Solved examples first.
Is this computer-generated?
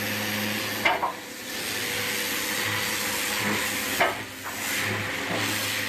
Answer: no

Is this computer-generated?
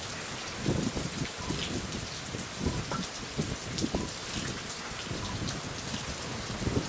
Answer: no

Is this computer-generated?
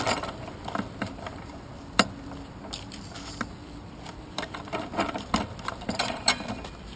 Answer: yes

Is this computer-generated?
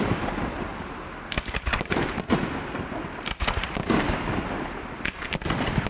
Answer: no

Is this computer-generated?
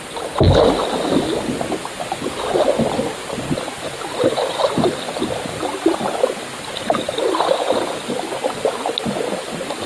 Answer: no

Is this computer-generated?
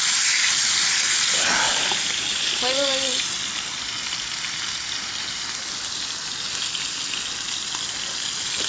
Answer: no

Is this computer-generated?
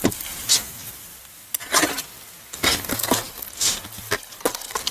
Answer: no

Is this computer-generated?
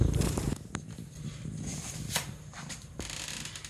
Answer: no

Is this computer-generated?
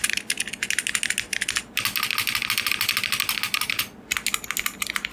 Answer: no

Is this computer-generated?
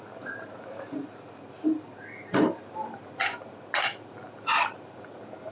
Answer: yes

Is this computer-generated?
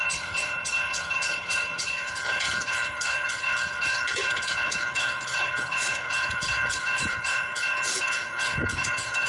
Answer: yes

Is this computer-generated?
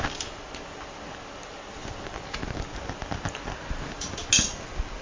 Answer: no